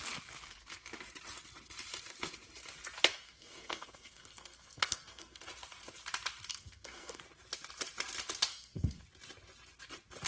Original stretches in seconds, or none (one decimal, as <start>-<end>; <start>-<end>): 0.0-3.1; 5.4-6.5; 7.2-8.5; 9.0-10.3

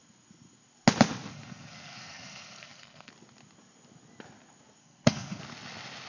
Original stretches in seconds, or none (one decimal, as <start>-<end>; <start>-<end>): 0.0-1.3; 3.1-4.8; 5.4-6.1

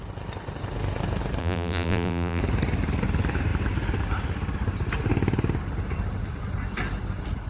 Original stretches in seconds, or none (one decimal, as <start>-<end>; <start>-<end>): 0.0-1.4; 2.4-7.5